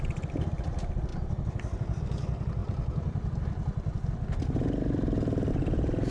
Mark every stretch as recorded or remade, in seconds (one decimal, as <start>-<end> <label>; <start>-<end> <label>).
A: 0.0-1.1 recorded; 1.1-2.0 remade; 2.0-2.6 recorded; 2.6-5.5 remade; 5.5-6.1 recorded